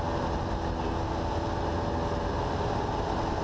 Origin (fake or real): real